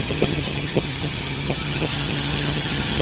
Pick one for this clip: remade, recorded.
remade